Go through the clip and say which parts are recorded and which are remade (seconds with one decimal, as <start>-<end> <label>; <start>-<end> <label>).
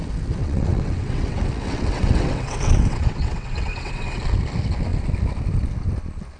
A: 0.0-0.4 recorded; 0.4-4.2 remade; 4.2-6.4 recorded